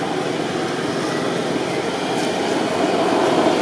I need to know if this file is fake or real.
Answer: real